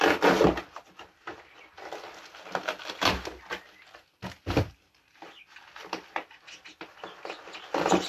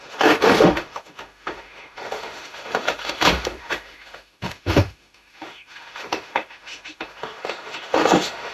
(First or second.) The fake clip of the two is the second